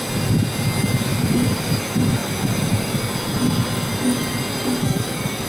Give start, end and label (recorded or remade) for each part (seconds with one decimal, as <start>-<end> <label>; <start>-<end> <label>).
0.0-4.8 recorded; 4.8-5.5 remade